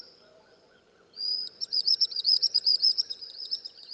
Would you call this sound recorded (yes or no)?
no